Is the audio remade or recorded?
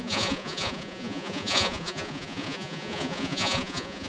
remade